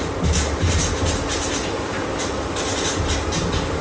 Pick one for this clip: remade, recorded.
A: recorded